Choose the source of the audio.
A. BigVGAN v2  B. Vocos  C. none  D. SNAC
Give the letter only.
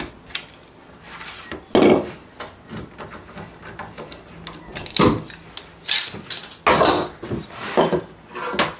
C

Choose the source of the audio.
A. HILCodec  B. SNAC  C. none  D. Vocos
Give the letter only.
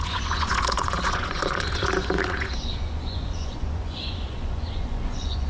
D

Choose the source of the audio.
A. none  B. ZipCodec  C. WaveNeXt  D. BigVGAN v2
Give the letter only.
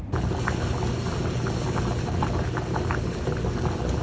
A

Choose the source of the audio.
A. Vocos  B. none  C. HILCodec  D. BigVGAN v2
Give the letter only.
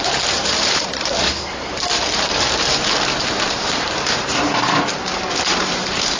D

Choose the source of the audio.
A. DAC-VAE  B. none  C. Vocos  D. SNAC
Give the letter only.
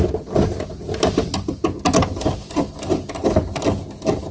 B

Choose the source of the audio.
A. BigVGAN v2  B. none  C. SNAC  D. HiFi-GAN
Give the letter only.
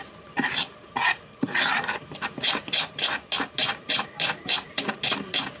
A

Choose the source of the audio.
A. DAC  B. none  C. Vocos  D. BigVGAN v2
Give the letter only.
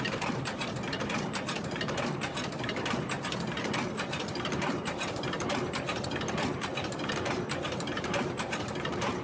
D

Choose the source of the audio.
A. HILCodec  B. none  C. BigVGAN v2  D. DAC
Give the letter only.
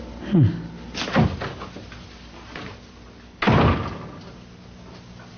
B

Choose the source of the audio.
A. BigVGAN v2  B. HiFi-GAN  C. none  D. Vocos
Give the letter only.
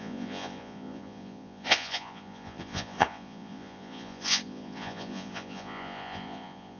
D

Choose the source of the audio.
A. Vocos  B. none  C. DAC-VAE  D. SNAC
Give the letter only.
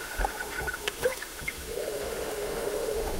C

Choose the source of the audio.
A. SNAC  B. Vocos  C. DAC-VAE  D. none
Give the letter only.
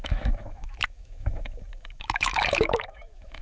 C